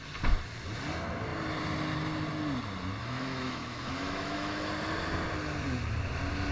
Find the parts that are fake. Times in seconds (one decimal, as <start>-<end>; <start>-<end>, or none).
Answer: 3.0-4.7